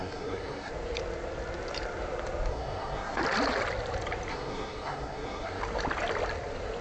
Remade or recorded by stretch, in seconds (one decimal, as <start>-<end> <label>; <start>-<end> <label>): 0.0-0.7 remade; 0.7-2.5 recorded; 2.5-3.2 remade; 3.2-4.3 recorded; 4.3-5.6 remade; 5.6-6.8 recorded